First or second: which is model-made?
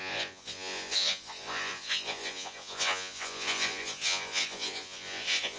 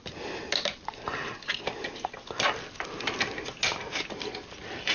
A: first